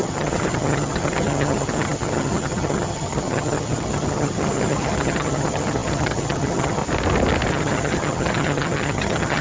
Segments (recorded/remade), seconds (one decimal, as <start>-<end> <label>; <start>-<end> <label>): 0.0-6.8 remade; 6.8-7.5 recorded; 7.5-9.4 remade